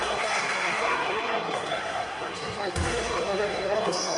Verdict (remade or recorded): remade